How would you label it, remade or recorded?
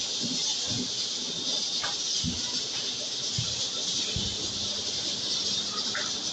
recorded